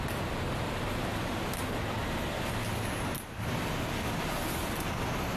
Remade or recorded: recorded